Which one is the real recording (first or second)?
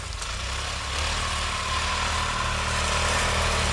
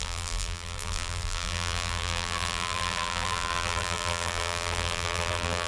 first